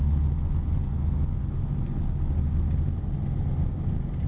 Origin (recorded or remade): recorded